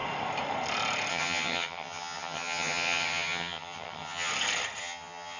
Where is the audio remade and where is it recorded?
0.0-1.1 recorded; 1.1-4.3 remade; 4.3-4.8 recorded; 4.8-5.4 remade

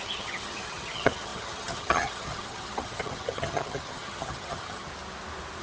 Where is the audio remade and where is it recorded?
0.0-4.9 remade; 4.9-5.6 recorded

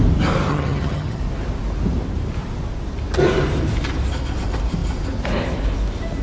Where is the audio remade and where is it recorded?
0.0-0.5 recorded; 0.5-1.2 remade; 1.2-6.2 recorded

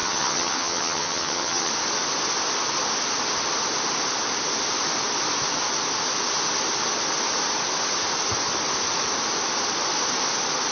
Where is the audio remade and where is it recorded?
0.0-1.7 remade; 1.7-10.7 recorded